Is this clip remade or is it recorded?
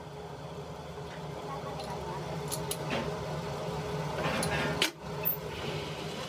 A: recorded